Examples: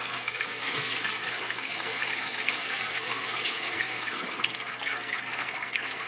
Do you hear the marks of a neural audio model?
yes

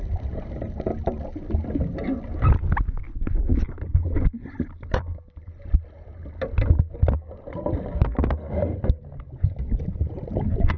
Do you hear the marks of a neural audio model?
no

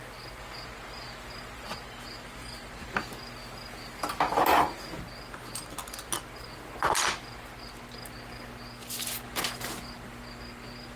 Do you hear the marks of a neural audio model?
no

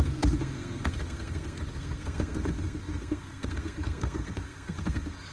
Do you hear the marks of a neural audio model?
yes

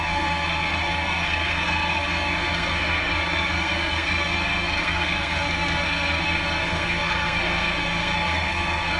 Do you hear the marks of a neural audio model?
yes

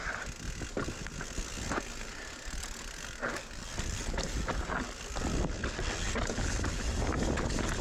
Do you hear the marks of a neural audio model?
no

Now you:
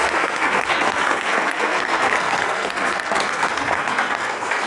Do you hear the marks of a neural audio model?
yes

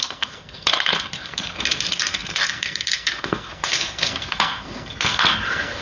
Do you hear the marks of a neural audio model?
yes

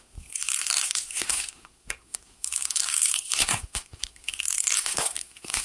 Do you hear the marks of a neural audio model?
yes